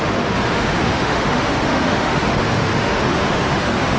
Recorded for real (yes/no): no